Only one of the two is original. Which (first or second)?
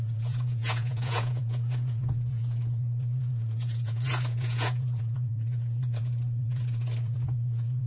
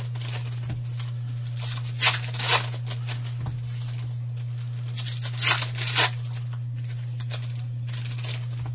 second